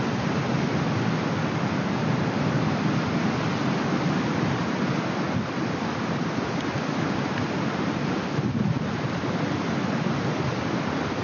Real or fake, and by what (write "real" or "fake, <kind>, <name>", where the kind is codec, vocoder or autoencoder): real